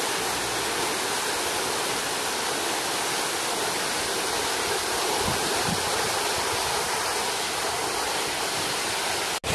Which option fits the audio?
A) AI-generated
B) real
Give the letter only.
B